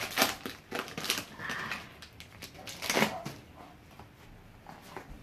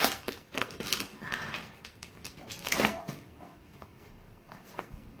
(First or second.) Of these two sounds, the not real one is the second